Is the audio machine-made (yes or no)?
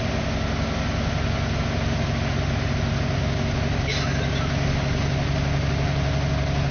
no